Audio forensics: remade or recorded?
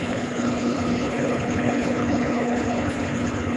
remade